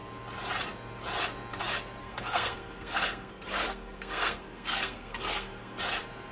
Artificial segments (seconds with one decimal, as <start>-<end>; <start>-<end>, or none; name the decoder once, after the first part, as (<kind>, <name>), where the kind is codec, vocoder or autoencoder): 2.0-5.8 (codec, SNAC)